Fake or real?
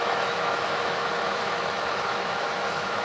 fake